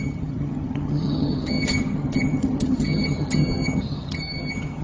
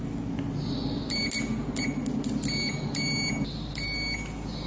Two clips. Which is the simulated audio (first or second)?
first